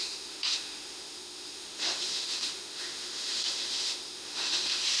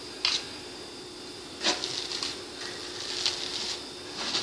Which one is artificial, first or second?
first